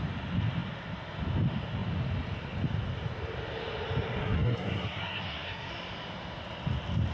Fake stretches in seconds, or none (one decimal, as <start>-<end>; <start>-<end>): 4.2-5.7